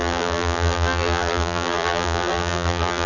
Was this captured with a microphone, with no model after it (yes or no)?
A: no